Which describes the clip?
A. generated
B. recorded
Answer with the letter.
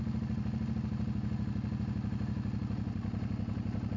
B